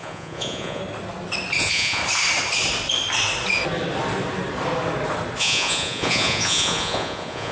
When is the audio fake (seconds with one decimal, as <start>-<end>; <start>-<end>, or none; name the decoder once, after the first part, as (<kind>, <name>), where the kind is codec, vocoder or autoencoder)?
0.0-0.8 (vocoder, Vocos); 1.6-2.0; 5.4-7.5